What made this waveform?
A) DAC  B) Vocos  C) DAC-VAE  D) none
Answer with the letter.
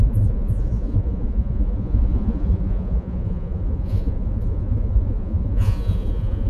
B